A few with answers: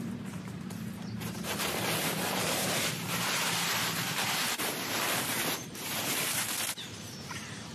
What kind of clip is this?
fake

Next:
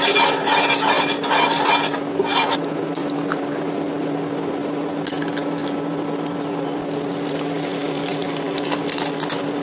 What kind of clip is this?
real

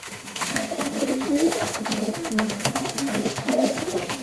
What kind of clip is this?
fake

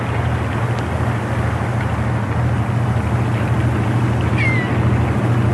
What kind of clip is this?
real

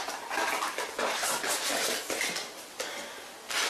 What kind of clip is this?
real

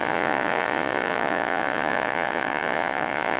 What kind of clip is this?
fake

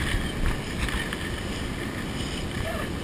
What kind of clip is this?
real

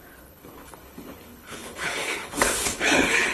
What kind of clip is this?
fake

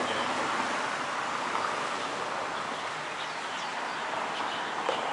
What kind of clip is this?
real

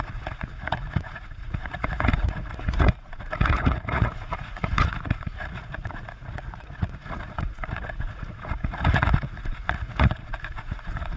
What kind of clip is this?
fake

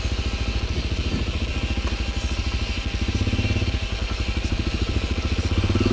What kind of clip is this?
real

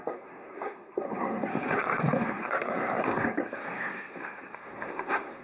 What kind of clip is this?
fake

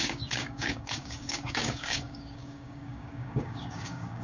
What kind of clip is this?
fake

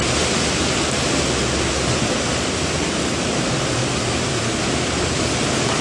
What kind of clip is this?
real